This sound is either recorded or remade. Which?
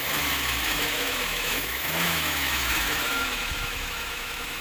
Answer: remade